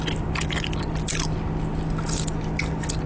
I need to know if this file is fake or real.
real